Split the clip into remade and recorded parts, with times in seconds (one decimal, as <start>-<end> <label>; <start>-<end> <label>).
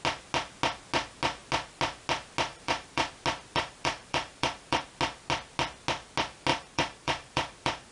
0.0-2.5 recorded; 2.5-3.1 remade; 3.1-3.5 recorded; 3.5-4.8 remade; 4.8-6.5 recorded; 6.5-7.9 remade